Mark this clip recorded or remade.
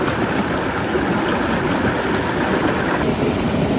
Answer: recorded